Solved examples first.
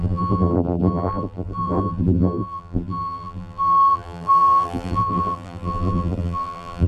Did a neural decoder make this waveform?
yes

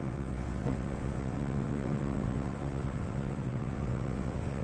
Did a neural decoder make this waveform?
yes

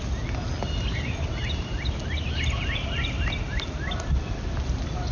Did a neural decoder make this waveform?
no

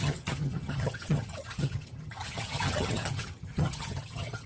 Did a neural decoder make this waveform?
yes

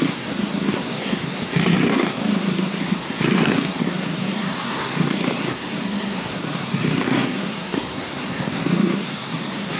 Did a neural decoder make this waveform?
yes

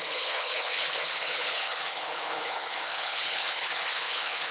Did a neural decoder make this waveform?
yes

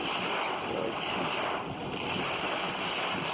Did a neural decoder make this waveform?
no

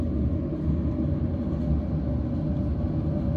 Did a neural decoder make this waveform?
no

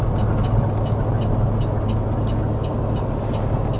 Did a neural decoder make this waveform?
no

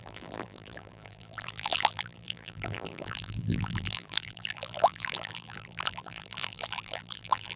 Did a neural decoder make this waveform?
yes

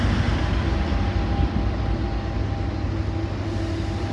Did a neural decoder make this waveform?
no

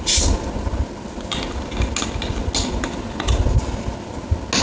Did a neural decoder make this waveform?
no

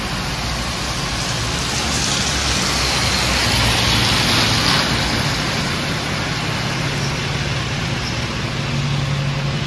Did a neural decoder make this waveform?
no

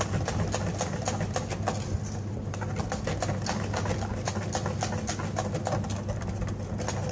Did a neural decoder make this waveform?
no